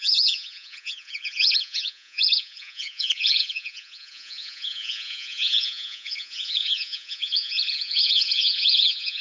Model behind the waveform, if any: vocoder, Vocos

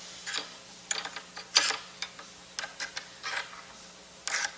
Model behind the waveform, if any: none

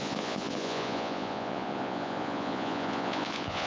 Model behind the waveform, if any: vocoder, Vocos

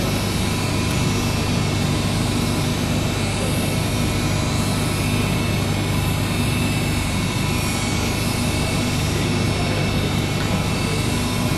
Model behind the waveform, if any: none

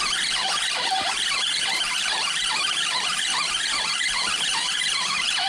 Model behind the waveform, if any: vocoder, BigVGAN v2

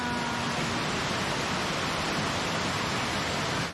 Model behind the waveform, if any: none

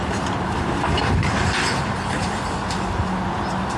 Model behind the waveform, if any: none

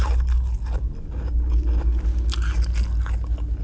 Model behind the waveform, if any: none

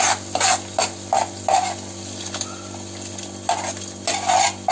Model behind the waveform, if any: none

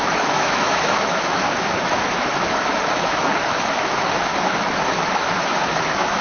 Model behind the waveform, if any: autoencoder, DAC-VAE